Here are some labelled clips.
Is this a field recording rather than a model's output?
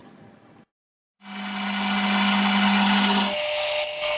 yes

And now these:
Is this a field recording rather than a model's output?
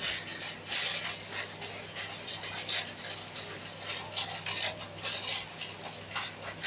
yes